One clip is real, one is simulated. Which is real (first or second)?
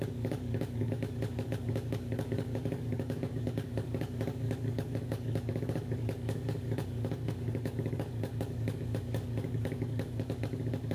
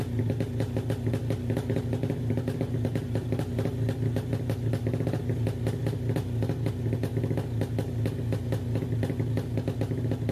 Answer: second